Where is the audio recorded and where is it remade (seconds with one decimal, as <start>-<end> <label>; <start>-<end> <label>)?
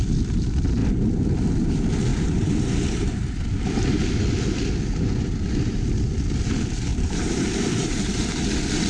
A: 0.0-2.1 recorded; 2.1-4.0 remade; 4.0-6.9 recorded; 6.9-8.2 remade; 8.2-8.9 recorded